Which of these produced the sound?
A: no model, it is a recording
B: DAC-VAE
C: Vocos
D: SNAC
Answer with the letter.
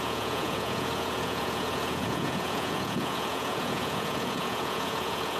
C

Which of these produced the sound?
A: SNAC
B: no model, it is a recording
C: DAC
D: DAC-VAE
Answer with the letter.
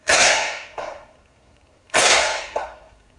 A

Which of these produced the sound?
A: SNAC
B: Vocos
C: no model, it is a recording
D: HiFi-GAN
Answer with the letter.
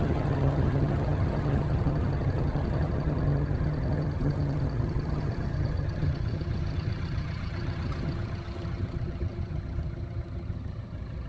D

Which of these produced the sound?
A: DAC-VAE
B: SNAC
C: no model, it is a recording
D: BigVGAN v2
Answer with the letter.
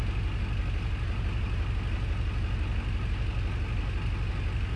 C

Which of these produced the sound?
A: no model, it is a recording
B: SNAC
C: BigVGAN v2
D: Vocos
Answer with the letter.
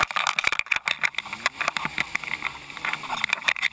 A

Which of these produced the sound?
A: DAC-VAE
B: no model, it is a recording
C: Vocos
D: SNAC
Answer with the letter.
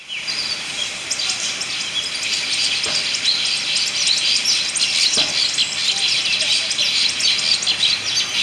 B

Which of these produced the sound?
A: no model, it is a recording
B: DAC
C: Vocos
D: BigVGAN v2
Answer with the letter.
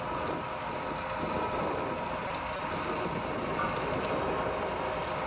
A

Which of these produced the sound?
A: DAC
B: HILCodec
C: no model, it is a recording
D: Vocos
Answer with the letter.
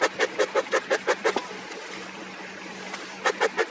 C